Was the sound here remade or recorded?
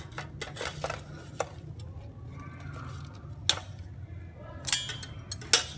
recorded